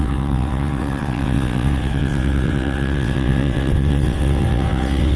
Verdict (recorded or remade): remade